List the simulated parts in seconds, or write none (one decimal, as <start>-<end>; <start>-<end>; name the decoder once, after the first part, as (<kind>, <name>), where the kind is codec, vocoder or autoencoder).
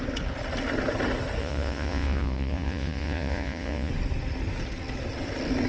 1.4-3.9 (vocoder, Vocos)